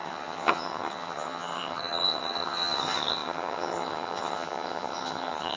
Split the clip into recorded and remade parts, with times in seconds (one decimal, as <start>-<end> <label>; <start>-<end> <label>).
0.0-5.6 remade